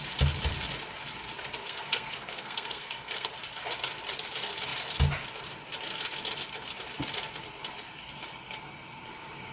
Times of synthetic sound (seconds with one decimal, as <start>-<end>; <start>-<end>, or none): 1.6-3.3